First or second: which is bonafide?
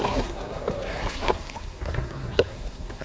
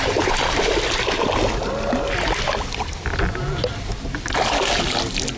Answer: second